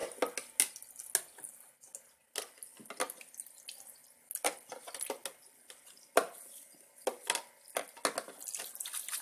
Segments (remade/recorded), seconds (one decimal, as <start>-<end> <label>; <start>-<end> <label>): 0.0-9.2 recorded

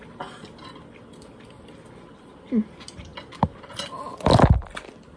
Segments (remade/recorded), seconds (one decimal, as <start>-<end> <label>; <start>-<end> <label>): 0.0-5.2 recorded

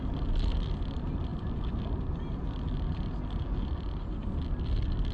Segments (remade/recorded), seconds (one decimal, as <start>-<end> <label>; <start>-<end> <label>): 0.0-5.1 recorded

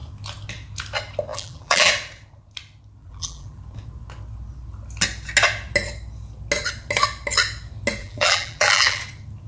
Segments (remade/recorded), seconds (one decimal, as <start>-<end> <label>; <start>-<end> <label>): 0.0-1.3 recorded; 1.3-1.9 remade; 1.9-3.0 recorded; 3.0-3.6 remade; 3.6-8.0 recorded; 8.0-9.0 remade; 9.0-9.5 recorded

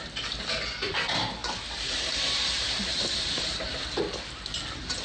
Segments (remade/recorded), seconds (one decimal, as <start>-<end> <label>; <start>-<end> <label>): 0.0-1.4 recorded; 1.4-4.0 remade; 4.0-5.0 recorded